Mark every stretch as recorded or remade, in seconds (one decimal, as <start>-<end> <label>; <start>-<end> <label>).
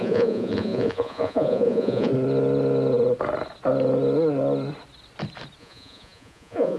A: 0.0-2.1 remade; 2.1-5.6 recorded; 5.6-6.8 remade